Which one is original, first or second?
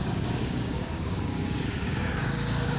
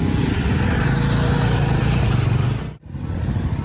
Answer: second